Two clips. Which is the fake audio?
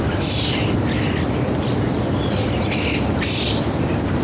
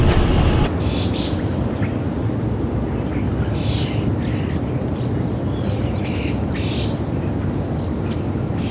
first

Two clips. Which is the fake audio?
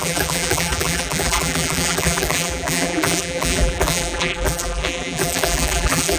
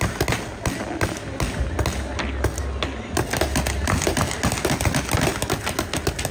first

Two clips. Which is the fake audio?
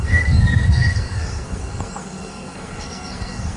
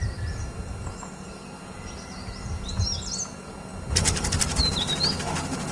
first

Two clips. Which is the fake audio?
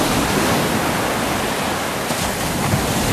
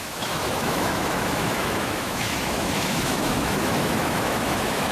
second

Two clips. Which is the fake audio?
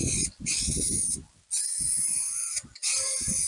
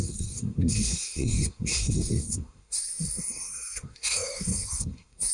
second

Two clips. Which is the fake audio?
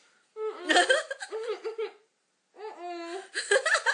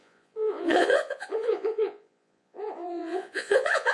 second